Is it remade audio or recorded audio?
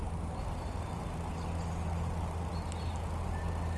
recorded